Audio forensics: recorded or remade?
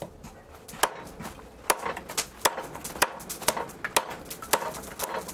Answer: recorded